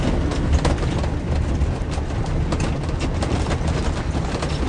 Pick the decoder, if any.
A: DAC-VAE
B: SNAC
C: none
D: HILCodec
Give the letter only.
C